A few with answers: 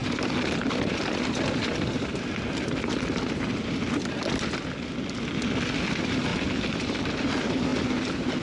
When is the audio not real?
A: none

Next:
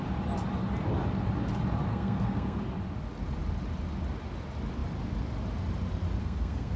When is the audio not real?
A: 1.9-2.6 (codec, SNAC); 6.2-6.8

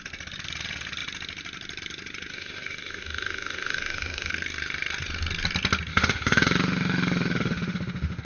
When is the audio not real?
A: 2.3-4.3 (autoencoder, DAC-VAE); 5.9-8.2

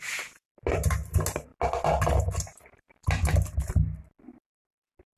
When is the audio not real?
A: none

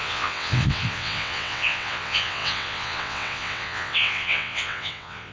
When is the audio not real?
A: 0.0-5.3 (vocoder, WaveNeXt)